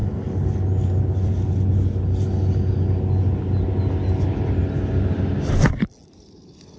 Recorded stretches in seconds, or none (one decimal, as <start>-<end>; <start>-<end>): 0.0-6.8